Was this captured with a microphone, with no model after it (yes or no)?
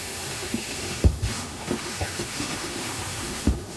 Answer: no